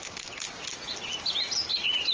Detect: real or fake real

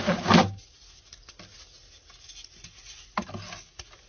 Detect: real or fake real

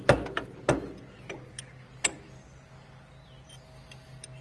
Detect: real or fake real